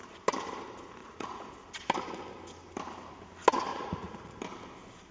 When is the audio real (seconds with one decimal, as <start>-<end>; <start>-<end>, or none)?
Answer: 0.0-1.0; 1.5-3.7; 4.4-5.1